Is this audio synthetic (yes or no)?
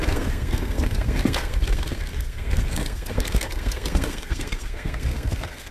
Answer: yes